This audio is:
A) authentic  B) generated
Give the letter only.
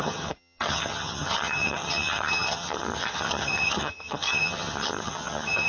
B